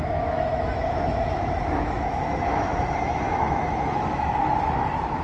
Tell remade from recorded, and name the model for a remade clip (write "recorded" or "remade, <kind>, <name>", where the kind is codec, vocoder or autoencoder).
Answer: remade, autoencoder, DAC-VAE